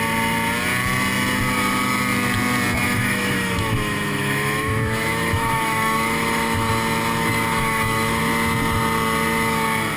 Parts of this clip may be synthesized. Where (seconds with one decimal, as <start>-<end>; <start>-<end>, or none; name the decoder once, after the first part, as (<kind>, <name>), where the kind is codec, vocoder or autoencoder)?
2.8-6.7 (autoencoder, DAC-VAE); 7.5-8.2